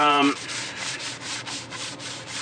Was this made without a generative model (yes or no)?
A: no